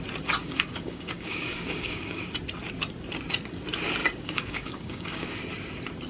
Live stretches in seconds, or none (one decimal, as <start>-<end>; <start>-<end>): 0.0-0.4; 2.3-4.0; 5.4-6.1